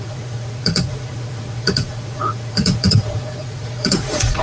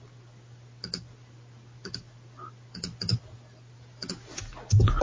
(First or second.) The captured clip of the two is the second